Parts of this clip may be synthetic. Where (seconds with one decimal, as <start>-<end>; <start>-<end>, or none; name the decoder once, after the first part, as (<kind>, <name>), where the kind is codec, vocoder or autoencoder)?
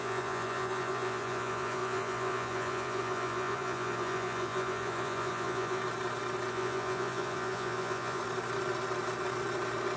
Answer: 0.0-5.8 (vocoder, Vocos); 6.5-8.2